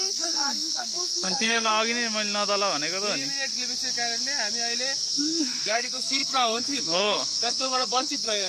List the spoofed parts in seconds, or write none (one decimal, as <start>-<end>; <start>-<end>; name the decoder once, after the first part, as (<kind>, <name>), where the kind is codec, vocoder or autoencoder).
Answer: 0.0-1.7 (codec, SNAC); 5.1-8.5